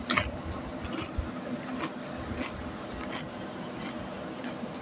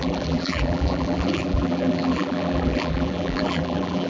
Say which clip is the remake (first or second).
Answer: second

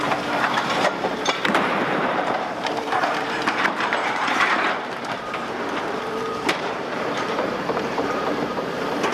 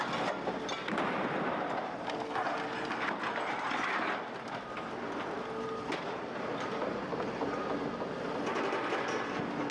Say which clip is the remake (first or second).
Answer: first